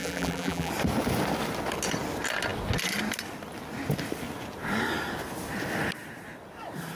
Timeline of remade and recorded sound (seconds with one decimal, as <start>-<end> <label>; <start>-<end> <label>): 0.0-0.7 remade; 0.7-7.0 recorded